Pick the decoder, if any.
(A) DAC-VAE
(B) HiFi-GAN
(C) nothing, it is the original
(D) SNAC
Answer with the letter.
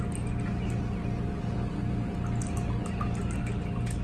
C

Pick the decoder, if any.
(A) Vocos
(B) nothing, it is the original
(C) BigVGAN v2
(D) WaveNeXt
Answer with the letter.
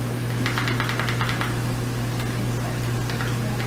B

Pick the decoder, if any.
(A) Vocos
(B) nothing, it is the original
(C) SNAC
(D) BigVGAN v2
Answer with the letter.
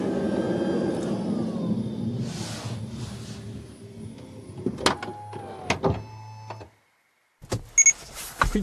B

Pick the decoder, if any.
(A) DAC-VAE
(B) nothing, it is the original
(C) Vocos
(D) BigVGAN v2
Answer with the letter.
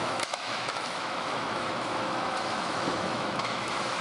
A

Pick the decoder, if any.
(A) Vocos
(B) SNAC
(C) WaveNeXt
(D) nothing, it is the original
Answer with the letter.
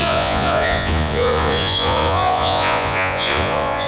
A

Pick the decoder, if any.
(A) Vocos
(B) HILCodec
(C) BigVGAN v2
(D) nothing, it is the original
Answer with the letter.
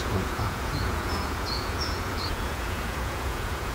A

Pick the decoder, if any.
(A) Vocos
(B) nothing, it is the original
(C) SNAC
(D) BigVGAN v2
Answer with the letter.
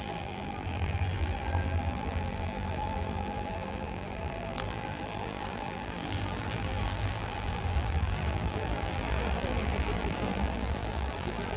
D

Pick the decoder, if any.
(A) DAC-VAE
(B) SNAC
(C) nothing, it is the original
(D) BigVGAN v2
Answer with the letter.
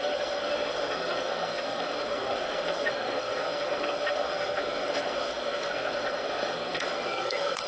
B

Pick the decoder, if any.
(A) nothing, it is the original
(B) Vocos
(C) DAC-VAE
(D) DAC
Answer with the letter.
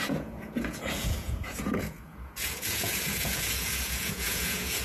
B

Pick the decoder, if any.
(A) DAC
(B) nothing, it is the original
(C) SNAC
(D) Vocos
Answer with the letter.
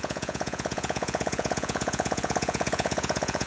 D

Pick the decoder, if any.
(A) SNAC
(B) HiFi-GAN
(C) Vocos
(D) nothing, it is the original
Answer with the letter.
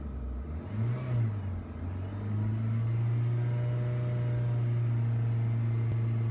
D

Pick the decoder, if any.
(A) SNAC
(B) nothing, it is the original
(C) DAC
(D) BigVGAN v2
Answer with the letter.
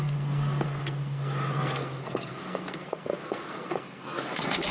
A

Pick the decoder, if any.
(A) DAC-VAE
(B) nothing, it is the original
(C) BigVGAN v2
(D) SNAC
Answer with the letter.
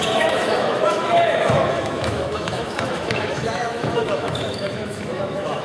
A